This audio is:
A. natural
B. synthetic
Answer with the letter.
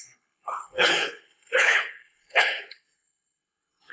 B